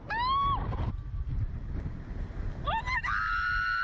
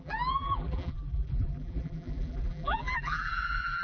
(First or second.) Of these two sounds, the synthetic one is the second